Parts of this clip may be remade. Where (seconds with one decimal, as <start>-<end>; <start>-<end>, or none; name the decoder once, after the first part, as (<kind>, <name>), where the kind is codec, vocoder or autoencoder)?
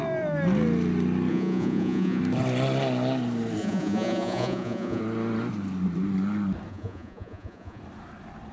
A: 1.3-2.2 (vocoder, Vocos); 3.6-5.0; 6.7-7.8